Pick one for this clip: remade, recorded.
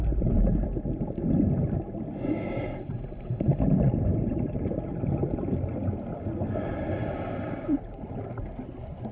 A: recorded